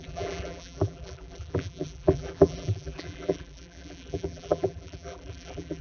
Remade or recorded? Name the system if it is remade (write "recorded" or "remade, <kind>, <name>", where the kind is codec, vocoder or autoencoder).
remade, vocoder, BigVGAN v2